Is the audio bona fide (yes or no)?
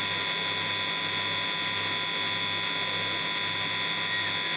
yes